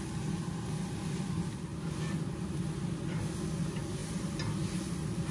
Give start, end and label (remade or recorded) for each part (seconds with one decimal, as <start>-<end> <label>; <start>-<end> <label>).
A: 0.0-5.3 recorded